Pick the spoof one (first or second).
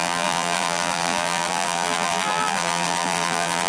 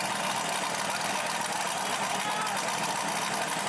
first